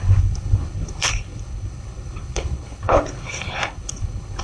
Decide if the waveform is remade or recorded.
remade